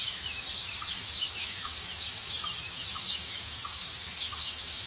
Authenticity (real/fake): fake